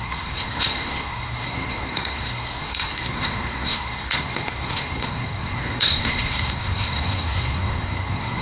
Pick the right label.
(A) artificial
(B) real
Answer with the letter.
A